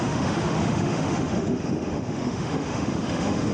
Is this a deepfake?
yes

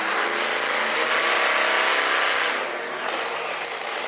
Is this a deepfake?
no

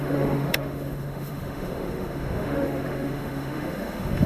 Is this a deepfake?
yes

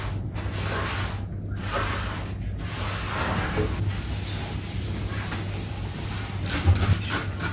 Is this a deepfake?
no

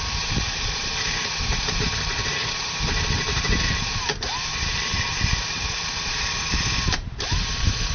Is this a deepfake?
yes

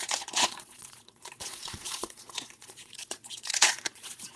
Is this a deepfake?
yes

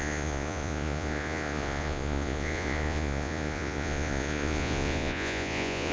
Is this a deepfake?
yes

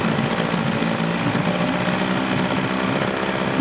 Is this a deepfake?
no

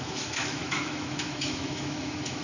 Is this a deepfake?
yes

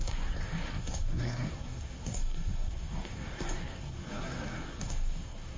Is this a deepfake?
yes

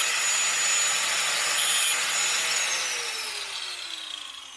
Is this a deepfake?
no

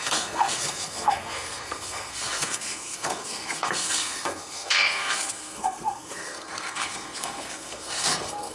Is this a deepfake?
yes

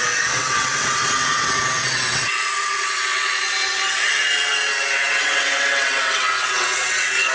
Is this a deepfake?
yes